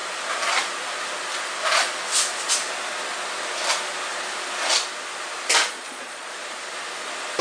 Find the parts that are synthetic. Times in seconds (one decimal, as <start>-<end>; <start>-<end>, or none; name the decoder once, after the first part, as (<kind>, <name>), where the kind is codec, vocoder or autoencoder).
5.6-6.3 (vocoder, Vocos)